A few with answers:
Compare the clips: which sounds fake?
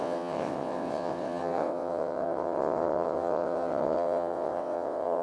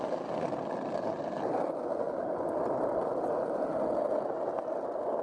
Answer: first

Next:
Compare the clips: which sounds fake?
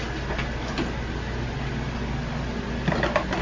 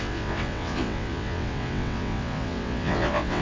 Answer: second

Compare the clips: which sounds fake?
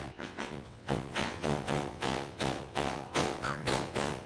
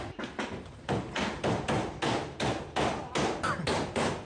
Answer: first